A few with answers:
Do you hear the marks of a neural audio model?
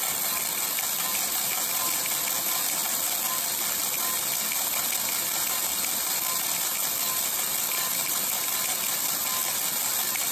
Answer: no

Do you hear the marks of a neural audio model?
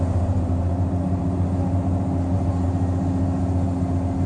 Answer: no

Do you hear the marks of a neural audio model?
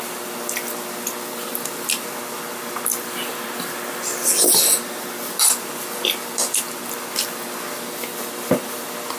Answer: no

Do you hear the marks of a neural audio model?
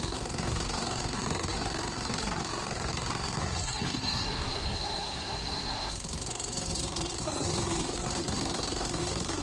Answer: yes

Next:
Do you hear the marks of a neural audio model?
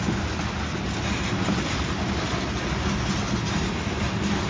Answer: no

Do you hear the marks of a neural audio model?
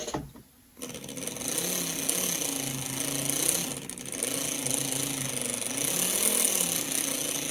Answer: no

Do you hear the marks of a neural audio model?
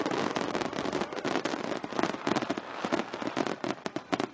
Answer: no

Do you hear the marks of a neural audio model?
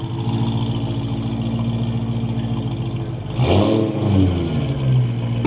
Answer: no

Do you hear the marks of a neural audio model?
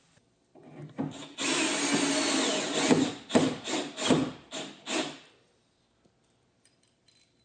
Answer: no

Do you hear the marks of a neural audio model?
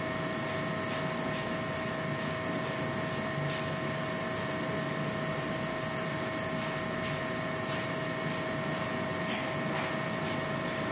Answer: no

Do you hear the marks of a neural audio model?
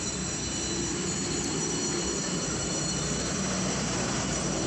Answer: no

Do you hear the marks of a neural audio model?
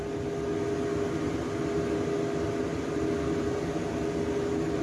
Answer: no